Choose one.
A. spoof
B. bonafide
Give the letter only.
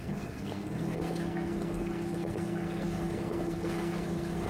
A